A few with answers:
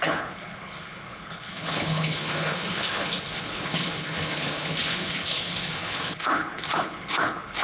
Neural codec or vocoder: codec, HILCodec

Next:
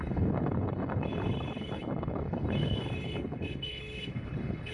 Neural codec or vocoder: codec, HILCodec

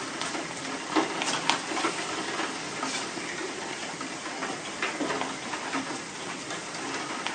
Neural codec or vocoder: none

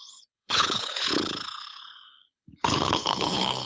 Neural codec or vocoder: codec, HILCodec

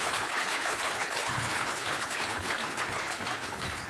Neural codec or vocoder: codec, HILCodec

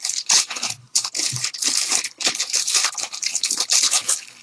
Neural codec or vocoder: codec, HILCodec